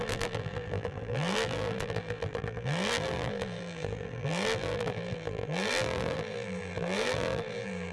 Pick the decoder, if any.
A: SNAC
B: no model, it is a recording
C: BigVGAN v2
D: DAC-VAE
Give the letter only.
C